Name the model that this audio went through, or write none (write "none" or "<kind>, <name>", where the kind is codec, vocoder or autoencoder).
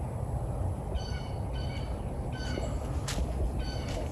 none